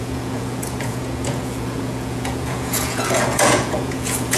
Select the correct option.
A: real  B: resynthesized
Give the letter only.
B